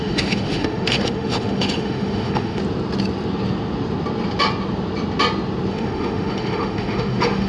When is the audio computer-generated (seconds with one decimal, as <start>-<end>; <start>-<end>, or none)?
0.0-2.6; 5.7-7.5

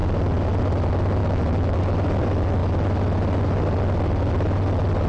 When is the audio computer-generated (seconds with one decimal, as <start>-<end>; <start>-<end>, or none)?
1.2-1.8

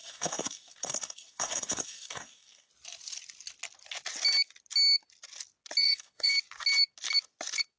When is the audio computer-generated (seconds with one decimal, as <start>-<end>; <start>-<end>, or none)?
0.0-2.7; 5.8-6.3

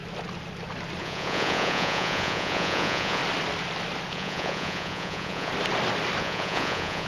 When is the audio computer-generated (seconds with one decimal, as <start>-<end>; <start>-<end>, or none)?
1.0-3.2; 4.1-5.5; 6.2-7.1

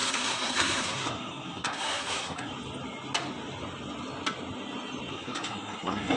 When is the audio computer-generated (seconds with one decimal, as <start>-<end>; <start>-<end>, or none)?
0.0-2.5; 5.1-6.2

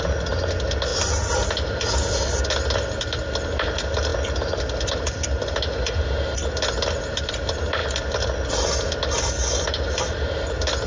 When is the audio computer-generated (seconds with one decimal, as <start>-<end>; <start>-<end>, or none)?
none

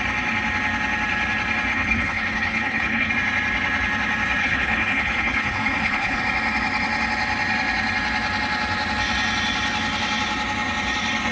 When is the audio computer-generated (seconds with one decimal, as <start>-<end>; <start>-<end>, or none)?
1.7-3.1; 4.4-6.2